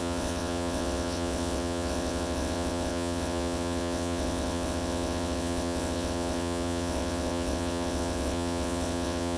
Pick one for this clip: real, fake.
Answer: fake